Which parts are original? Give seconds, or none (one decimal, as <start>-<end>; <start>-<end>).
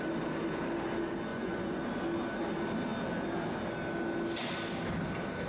0.0-1.3; 1.8-5.5